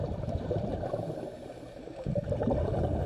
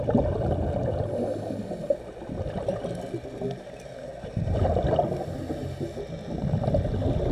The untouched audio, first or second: second